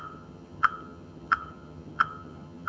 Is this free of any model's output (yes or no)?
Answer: no